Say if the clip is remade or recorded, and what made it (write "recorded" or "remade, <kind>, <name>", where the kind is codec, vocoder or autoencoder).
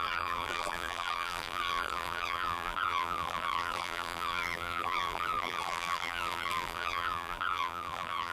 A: remade, vocoder, BigVGAN v2